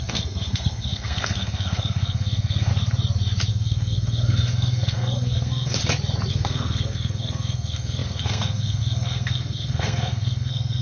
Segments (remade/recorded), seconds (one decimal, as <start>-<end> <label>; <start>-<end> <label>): 0.0-2.7 remade; 2.7-3.5 recorded; 3.5-5.8 remade; 5.8-6.3 recorded; 6.3-10.8 remade